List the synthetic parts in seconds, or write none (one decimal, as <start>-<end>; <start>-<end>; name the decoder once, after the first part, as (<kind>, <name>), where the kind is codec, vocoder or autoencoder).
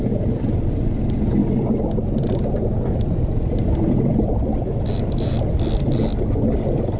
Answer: 0.0-1.4 (vocoder, BigVGAN v2); 2.6-7.0